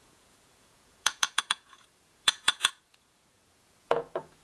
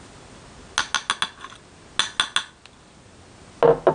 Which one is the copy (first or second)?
first